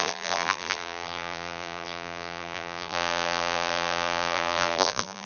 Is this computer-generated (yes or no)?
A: yes